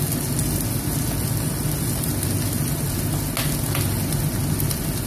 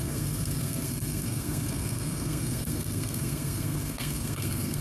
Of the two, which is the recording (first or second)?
first